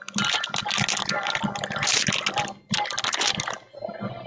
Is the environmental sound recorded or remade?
recorded